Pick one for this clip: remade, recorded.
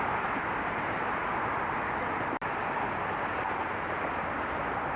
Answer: recorded